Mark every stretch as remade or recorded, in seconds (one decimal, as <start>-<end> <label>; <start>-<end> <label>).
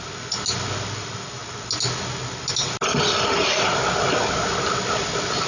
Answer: 0.0-5.5 recorded